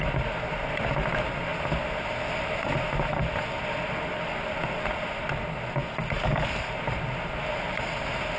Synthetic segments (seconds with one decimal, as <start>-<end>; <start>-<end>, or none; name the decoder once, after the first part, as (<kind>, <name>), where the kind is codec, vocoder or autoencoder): none